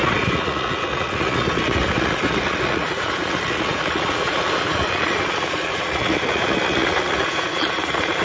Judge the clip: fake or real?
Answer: fake